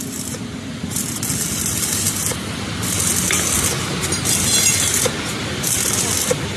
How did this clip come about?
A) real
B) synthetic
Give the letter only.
A